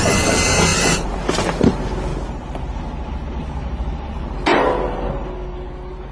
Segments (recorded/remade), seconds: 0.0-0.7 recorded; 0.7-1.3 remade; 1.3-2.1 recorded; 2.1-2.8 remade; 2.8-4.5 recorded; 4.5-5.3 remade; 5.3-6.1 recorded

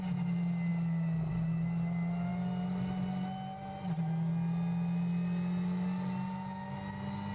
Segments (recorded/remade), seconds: 0.0-7.3 recorded

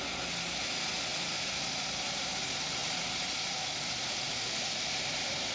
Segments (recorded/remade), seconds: 0.0-1.1 recorded; 1.1-2.3 remade; 2.3-2.8 recorded; 2.8-5.5 remade

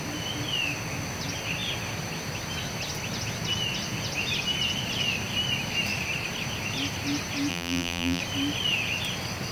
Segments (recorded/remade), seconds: 0.0-7.5 recorded; 7.5-8.2 remade; 8.2-9.5 recorded

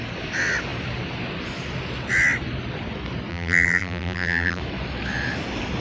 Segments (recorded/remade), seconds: 0.0-3.3 recorded; 3.3-4.6 remade; 4.6-5.8 recorded

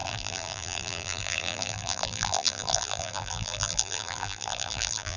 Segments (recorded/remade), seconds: 0.0-5.2 remade

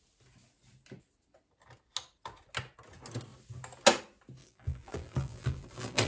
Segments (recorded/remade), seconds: 0.0-4.4 recorded; 4.4-6.1 remade

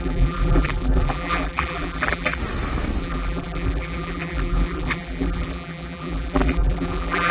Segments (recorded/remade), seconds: 0.0-2.4 remade; 2.4-3.0 recorded; 3.0-7.3 remade